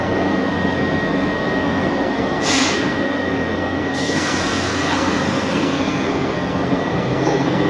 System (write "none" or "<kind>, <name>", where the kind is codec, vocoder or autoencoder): codec, SNAC